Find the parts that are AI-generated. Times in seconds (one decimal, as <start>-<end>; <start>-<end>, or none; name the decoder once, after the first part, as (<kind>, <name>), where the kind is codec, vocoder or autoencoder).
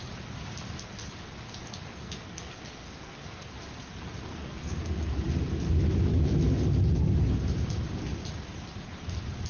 1.9-3.5 (codec, SNAC); 4.3-5.1